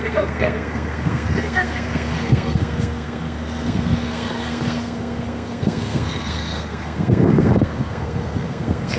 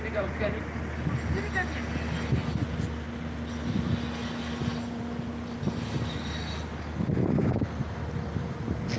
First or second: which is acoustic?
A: second